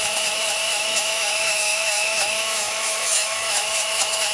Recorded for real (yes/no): no